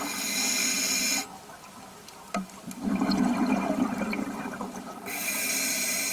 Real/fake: real